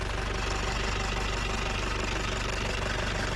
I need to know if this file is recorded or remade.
recorded